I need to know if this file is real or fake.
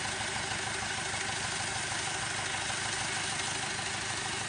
real